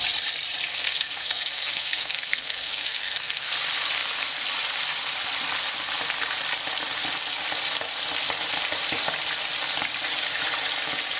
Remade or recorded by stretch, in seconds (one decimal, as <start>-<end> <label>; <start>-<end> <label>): 0.0-0.7 recorded; 0.7-3.5 remade; 3.5-11.2 recorded